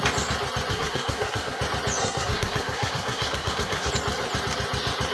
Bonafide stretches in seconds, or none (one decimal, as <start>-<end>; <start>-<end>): 0.0-0.7; 1.6-2.0; 3.9-5.1